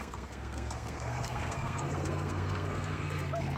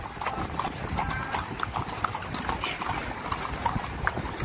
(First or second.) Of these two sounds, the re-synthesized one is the first